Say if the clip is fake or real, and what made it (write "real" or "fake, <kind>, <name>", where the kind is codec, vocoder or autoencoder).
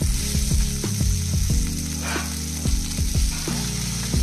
real